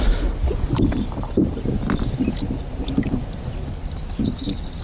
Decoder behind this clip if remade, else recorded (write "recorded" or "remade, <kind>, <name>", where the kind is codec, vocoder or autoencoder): recorded